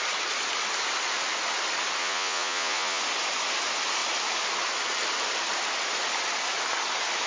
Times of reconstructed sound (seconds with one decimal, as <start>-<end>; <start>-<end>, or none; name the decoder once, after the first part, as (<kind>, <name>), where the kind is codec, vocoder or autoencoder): 2.0-3.0 (vocoder, Vocos)